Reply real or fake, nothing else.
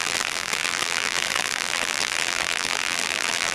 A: fake